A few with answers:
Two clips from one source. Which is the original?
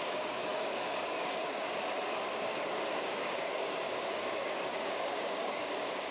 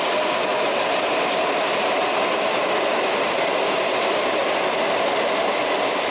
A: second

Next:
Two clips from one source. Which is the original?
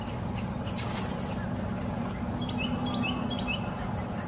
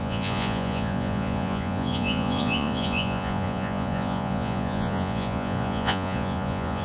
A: first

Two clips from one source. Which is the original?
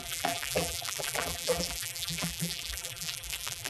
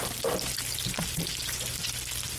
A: second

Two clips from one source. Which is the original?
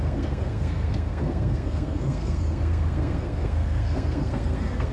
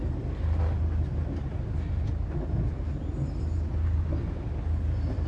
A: second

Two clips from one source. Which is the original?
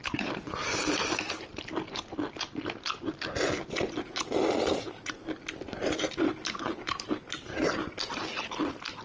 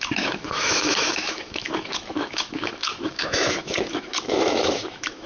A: first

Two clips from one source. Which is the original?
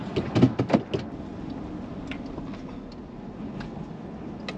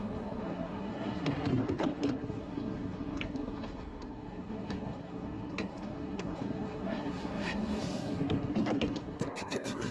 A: first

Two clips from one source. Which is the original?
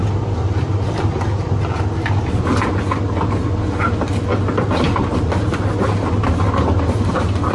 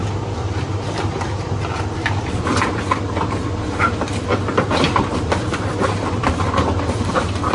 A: first